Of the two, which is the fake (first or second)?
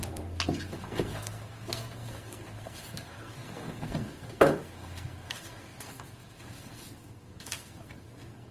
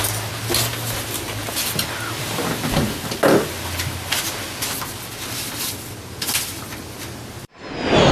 first